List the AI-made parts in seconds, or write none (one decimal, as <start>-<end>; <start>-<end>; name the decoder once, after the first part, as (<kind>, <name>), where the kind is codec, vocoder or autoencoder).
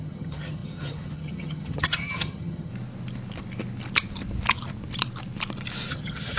0.0-2.7 (vocoder, HiFi-GAN); 5.9-6.4